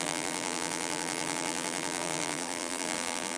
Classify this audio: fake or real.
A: fake